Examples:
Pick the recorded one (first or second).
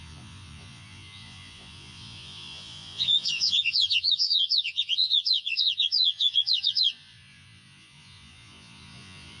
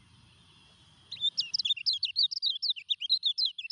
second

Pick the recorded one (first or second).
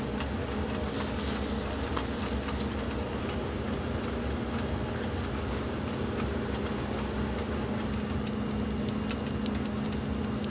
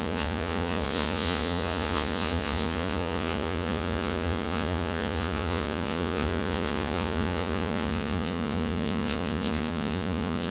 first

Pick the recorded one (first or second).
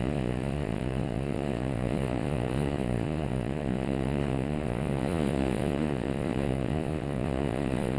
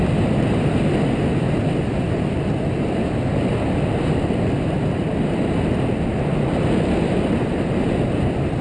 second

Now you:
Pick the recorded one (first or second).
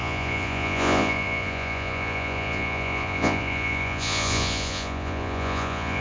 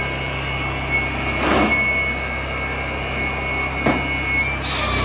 second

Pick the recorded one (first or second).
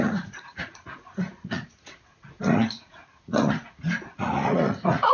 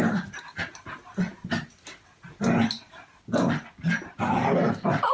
second